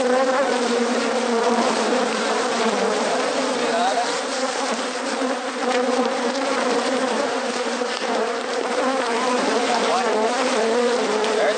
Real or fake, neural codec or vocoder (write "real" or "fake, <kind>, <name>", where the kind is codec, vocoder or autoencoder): fake, vocoder, BigVGAN v2